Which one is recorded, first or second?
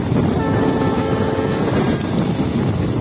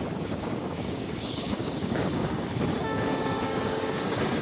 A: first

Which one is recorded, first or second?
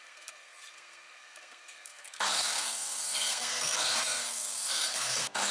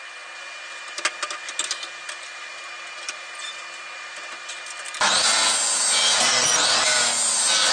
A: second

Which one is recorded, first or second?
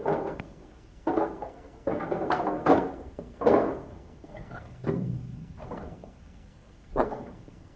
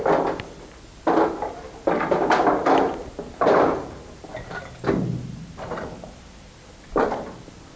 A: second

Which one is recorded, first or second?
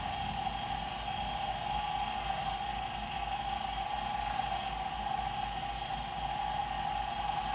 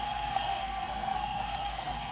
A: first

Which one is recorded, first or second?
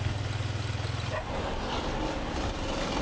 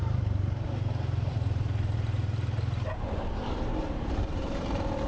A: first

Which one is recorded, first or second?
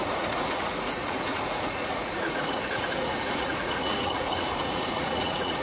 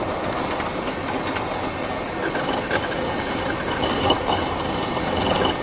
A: second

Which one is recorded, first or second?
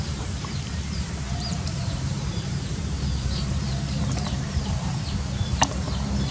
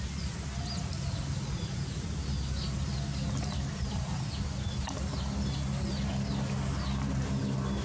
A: second